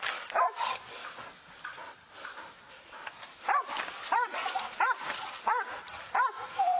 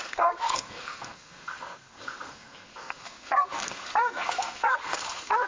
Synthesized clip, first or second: second